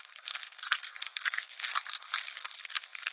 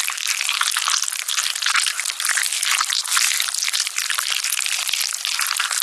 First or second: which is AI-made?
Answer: first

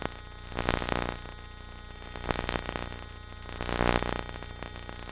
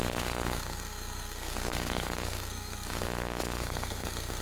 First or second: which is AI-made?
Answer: second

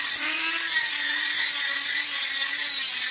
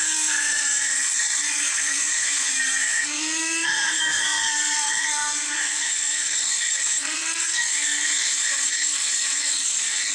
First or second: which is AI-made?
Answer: second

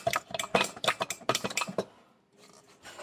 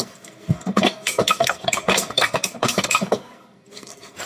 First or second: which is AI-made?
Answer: second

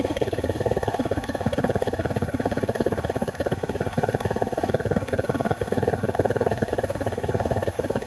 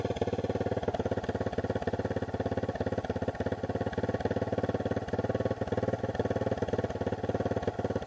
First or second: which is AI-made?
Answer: first